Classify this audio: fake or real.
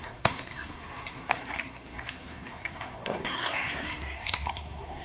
fake